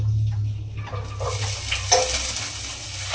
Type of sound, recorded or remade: recorded